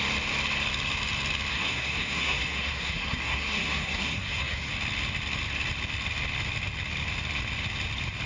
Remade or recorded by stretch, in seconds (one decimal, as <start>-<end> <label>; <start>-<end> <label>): 0.0-1.5 recorded; 1.5-4.7 remade; 4.7-8.3 recorded